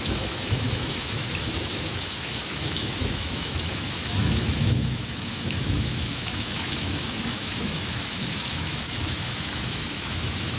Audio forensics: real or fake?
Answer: fake